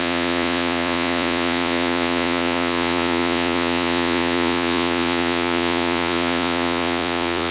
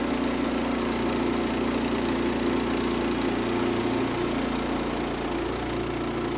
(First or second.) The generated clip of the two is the first